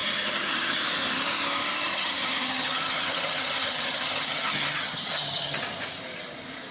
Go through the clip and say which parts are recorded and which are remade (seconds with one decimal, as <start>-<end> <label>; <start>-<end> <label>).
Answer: 0.0-0.8 remade; 0.8-1.9 recorded; 1.9-5.6 remade; 5.6-6.7 recorded